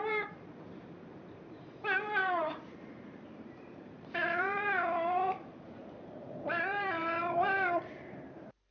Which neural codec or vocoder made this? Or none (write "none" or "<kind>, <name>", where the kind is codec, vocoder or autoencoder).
vocoder, BigVGAN v2